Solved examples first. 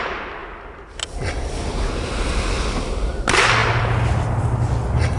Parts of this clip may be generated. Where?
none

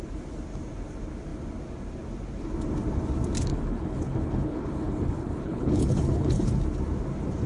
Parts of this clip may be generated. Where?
3.5-6.5 (codec, HILCodec)

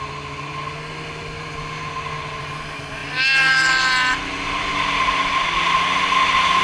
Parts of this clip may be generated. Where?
none

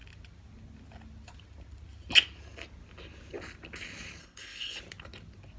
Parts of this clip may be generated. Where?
4.2-4.8 (codec, HILCodec)

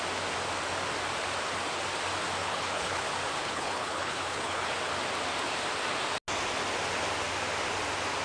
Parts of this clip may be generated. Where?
2.4-3.0 (codec, HILCodec); 3.4-4.7